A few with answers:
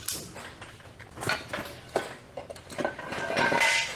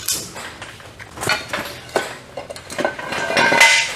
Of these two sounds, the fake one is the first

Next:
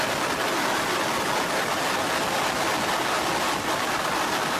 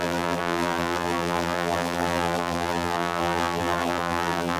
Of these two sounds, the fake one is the second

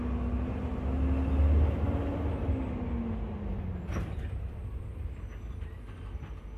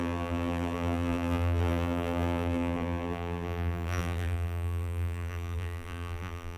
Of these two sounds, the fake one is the second